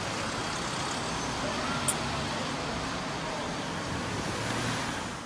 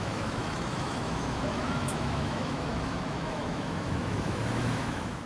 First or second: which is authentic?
first